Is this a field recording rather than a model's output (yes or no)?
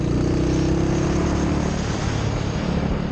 yes